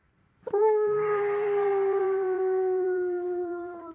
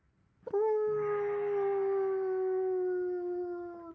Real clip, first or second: second